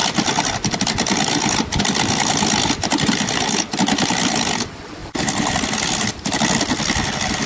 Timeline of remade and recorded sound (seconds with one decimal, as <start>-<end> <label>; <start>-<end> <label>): 0.0-7.5 recorded